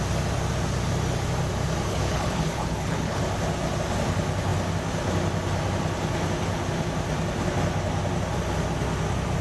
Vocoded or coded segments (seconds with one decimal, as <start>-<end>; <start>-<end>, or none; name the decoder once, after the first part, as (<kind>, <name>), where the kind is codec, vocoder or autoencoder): 1.9-3.2 (codec, HILCodec)